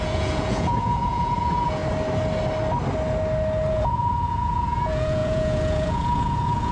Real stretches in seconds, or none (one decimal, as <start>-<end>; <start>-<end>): 1.8-3.7